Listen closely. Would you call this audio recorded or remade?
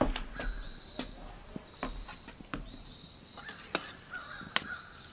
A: recorded